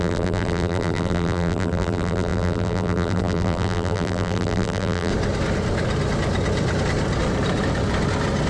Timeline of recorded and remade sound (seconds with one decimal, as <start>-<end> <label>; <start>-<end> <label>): 0.0-5.1 remade; 5.1-8.5 recorded

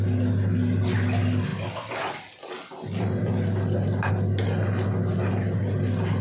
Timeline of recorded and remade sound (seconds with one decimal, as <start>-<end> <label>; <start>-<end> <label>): 0.0-6.2 recorded

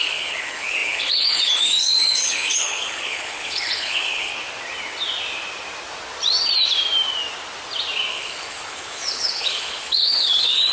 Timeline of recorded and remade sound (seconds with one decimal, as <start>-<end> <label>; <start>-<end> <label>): 0.0-4.3 remade; 4.3-8.1 recorded; 8.1-10.7 remade

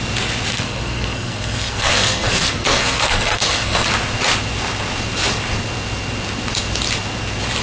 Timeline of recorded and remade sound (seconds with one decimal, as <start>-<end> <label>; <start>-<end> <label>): 0.0-0.5 recorded; 0.5-3.9 remade; 3.9-7.6 recorded

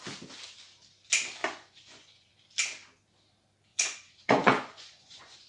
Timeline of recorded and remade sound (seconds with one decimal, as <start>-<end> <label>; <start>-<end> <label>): 0.0-1.4 recorded; 1.4-2.3 remade; 2.3-3.7 recorded; 3.7-5.5 remade